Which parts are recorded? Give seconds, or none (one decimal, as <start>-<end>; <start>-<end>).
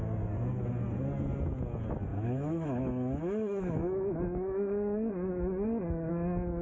0.0-2.1; 6.1-6.6